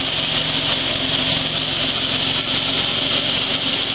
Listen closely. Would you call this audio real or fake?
real